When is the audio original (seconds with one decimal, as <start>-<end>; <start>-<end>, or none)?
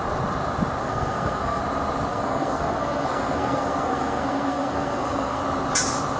0.0-0.8; 1.6-2.1; 5.4-6.2